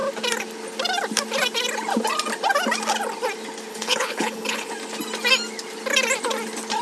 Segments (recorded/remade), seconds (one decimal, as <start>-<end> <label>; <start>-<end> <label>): 0.0-3.7 recorded; 3.7-4.7 remade; 4.7-6.8 recorded